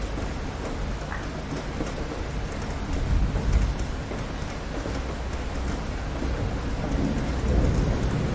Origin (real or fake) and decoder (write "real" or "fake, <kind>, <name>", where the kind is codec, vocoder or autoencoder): real